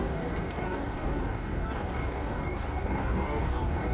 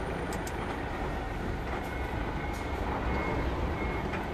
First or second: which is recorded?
second